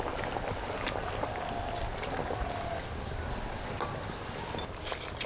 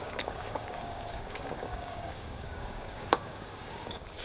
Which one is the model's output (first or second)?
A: second